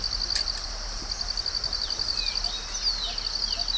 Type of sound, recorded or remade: recorded